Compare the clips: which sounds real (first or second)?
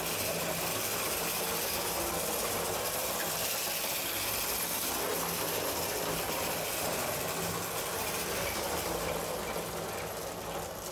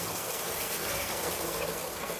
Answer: first